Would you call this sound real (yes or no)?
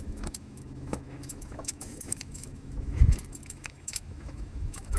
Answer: no